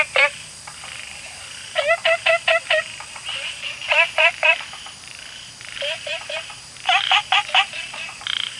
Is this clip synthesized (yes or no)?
yes